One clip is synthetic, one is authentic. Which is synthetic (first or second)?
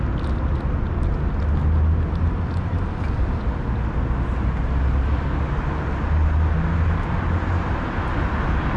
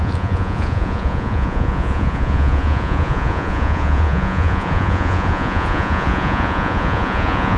second